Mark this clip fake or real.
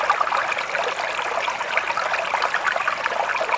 real